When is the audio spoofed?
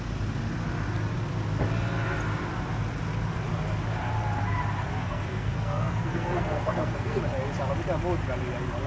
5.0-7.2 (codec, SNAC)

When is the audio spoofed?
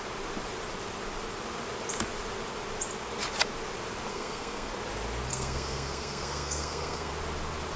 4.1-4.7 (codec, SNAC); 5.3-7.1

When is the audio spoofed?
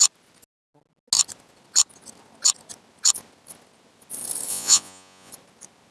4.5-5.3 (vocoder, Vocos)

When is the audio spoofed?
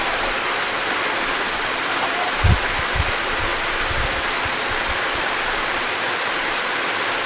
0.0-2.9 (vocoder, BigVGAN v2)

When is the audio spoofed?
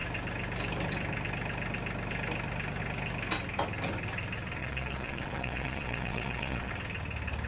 4.6-6.7 (vocoder, Vocos)